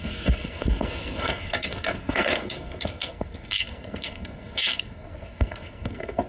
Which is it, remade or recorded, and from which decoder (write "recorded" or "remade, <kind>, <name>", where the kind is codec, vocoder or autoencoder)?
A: remade, codec, SNAC